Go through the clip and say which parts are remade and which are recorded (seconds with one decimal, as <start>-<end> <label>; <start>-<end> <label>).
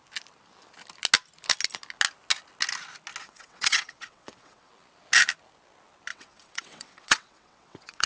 0.0-3.2 recorded; 3.2-4.7 remade; 4.7-6.1 recorded; 6.1-8.1 remade